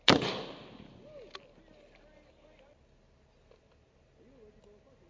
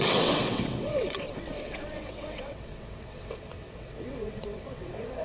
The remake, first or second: second